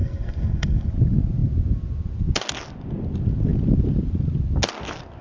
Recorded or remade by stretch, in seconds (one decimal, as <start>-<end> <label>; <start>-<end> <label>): 0.0-0.9 remade; 0.9-5.2 recorded